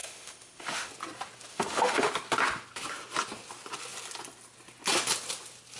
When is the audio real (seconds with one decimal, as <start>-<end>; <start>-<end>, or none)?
0.9-1.5; 2.1-5.8